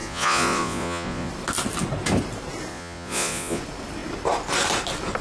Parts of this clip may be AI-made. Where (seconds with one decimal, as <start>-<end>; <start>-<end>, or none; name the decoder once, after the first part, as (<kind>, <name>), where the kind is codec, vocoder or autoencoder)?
0.0-1.3 (vocoder, Vocos); 2.7-3.6